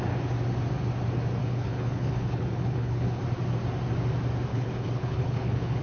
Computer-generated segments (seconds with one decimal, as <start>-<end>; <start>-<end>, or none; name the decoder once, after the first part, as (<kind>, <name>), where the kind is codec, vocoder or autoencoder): 1.4-3.2 (codec, HILCodec); 4.5-5.8

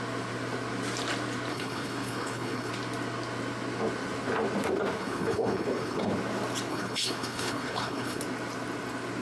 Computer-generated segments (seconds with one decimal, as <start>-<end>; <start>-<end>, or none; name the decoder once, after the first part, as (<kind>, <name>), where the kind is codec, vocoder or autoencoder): 1.5-2.7 (codec, HILCodec); 5.0-6.1; 6.7-8.2

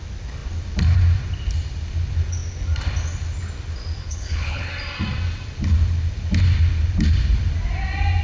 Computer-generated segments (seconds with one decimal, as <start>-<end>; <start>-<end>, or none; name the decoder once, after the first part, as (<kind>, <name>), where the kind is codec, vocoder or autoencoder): 4.0-4.7 (codec, HILCodec)

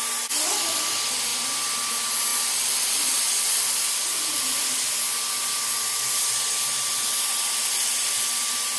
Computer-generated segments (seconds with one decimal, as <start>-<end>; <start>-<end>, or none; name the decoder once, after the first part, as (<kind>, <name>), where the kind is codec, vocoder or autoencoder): none

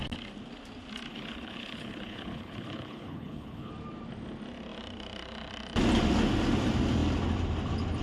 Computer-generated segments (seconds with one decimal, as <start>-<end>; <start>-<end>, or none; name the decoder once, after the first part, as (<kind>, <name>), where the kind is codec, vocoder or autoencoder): 1.1-3.7 (codec, HILCodec)